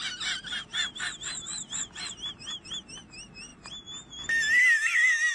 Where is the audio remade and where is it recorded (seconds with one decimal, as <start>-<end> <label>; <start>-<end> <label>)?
0.0-5.3 recorded